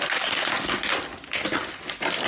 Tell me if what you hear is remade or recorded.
recorded